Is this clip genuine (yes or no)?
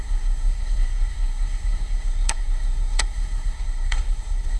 no